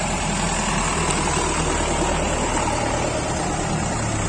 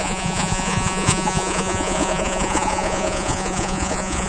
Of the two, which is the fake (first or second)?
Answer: second